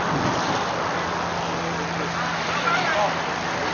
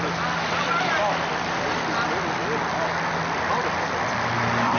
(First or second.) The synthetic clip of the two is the second